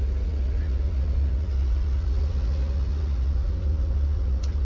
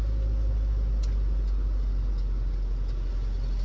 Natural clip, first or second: second